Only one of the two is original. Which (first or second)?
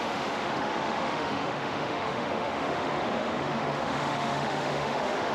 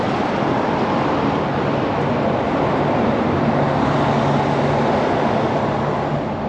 second